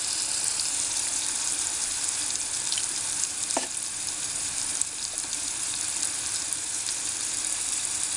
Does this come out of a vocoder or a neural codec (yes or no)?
yes